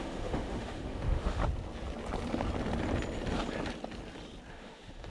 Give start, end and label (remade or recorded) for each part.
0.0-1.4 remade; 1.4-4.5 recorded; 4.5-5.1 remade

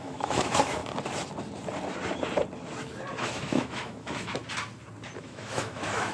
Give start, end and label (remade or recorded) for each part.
0.0-0.8 remade; 0.8-3.2 recorded; 3.2-4.4 remade; 4.4-5.2 recorded; 5.2-6.1 remade

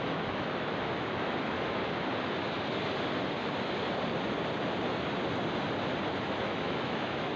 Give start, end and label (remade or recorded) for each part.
0.0-1.8 remade; 1.8-6.2 recorded; 6.2-7.4 remade

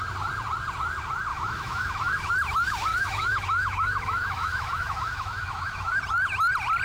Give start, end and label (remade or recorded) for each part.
0.0-1.3 recorded; 1.3-2.3 remade; 2.3-2.9 recorded; 2.9-6.0 remade; 6.0-6.8 recorded

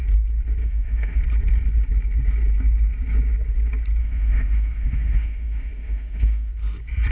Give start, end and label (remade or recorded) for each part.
0.0-0.6 recorded; 0.6-1.2 remade; 1.2-4.0 recorded; 4.0-6.5 remade; 6.5-7.1 recorded